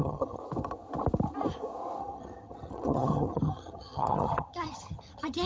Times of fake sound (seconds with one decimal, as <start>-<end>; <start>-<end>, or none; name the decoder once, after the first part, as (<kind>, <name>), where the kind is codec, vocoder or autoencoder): 0.0-0.4 (vocoder, HiFi-GAN); 2.0-5.5